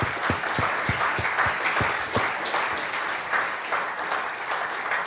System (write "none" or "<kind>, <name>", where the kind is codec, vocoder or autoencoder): none